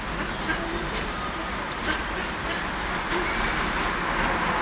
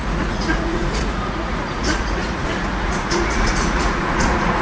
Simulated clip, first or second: second